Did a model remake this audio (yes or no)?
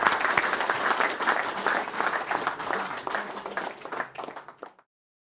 no